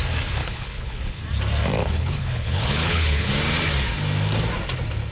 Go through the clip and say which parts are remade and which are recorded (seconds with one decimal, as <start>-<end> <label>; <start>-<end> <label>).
0.0-0.4 recorded; 0.4-1.2 remade; 1.2-1.8 recorded; 1.8-3.3 remade; 3.3-5.1 recorded